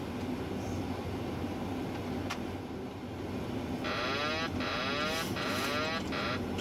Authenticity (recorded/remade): recorded